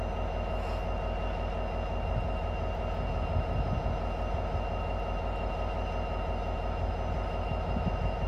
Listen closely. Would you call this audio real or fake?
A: real